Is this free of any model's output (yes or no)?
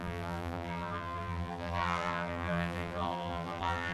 no